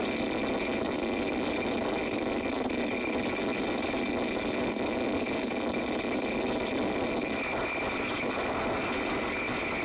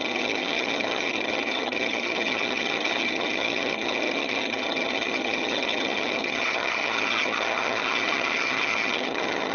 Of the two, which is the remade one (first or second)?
second